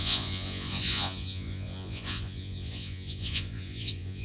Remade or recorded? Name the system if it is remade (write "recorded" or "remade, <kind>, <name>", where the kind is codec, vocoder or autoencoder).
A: remade, vocoder, Vocos